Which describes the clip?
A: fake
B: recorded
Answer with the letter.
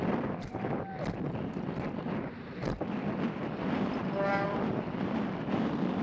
A